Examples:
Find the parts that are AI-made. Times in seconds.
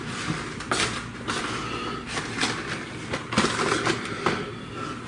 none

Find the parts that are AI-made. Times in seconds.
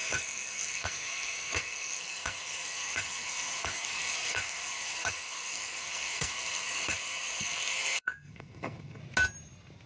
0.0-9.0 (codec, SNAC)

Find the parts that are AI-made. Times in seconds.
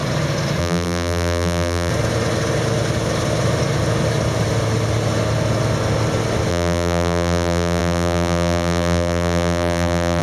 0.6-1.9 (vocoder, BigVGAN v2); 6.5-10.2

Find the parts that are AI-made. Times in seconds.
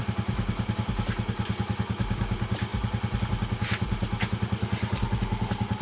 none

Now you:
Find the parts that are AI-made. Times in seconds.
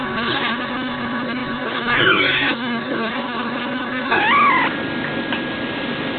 0.0-4.2 (codec, SNAC)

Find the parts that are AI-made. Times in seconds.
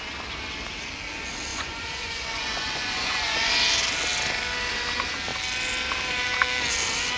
1.5-3.5 (vocoder, Vocos)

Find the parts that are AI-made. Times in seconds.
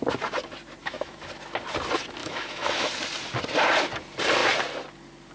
0.8-1.3 (autoencoder, DAC-VAE); 2.2-2.9